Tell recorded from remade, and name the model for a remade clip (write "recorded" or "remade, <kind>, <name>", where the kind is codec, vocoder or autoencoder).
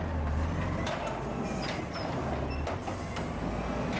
recorded